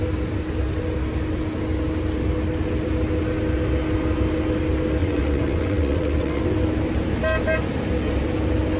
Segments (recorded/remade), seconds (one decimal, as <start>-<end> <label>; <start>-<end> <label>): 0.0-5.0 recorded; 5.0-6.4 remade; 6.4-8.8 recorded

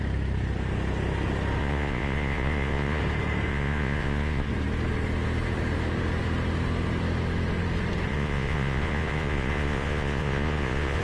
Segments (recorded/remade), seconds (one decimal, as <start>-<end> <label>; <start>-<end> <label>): 0.0-1.6 recorded; 1.6-3.0 remade; 3.0-3.5 recorded; 3.5-4.5 remade; 4.5-8.1 recorded; 8.1-11.0 remade

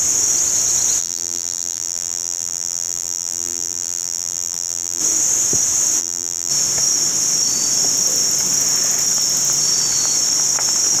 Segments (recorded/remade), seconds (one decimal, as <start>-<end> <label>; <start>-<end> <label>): 0.0-1.0 recorded; 1.0-5.0 remade; 5.0-6.0 recorded; 6.0-6.5 remade; 6.5-11.0 recorded

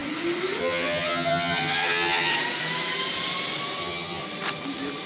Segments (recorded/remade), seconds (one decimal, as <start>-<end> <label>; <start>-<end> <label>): 0.0-0.6 recorded; 0.6-2.3 remade; 2.3-3.8 recorded; 3.8-4.2 remade; 4.2-5.1 recorded

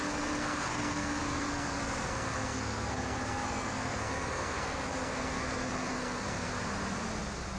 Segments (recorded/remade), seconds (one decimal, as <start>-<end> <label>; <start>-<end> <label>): 0.0-6.5 remade; 6.5-7.6 recorded